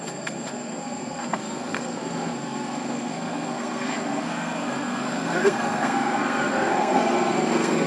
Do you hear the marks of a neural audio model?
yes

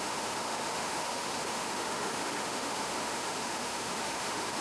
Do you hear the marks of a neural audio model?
yes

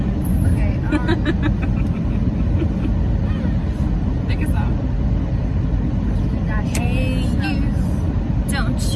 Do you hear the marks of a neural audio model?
no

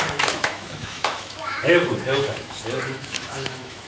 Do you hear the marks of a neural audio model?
yes